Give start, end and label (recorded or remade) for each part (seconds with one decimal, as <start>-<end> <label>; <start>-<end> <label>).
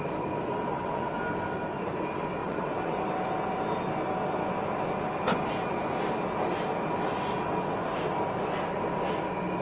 0.0-0.7 recorded; 0.7-1.2 remade; 1.2-2.4 recorded; 2.4-3.0 remade; 3.0-9.6 recorded